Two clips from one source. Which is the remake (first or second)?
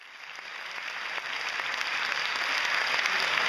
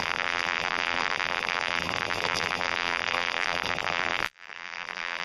second